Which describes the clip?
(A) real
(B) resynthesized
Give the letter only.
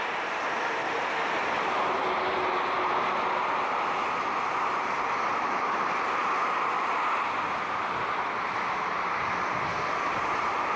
A